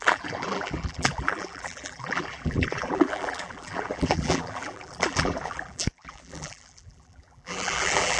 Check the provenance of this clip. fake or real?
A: fake